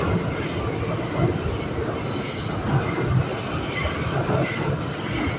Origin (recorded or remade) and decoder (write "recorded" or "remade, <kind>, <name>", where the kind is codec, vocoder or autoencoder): recorded